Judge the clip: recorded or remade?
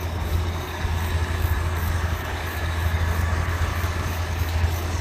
remade